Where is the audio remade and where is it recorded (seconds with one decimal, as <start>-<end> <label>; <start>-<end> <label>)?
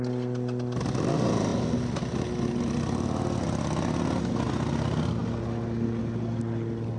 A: 0.0-7.0 recorded